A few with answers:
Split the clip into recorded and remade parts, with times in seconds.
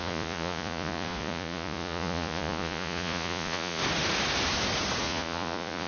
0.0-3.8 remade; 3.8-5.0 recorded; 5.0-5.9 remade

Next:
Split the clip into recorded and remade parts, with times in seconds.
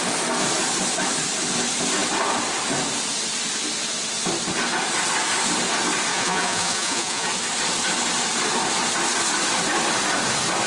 0.0-6.1 recorded; 6.1-7.3 remade; 7.3-10.7 recorded